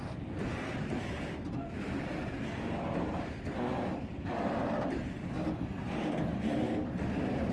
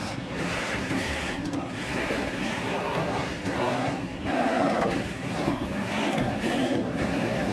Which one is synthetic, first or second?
second